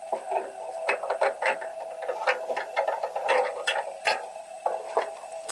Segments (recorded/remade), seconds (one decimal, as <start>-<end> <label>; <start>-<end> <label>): 0.0-1.7 remade; 1.7-3.3 recorded; 3.3-5.5 remade